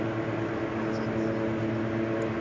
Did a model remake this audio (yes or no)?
no